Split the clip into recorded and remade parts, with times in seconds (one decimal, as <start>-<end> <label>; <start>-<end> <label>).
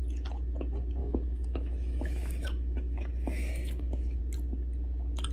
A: 0.0-1.0 recorded; 1.0-4.2 remade; 4.2-5.3 recorded